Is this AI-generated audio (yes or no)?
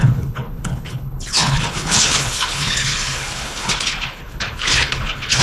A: yes